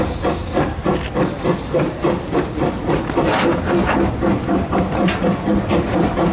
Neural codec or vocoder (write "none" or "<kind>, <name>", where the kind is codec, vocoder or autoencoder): none